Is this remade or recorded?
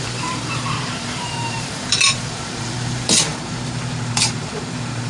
remade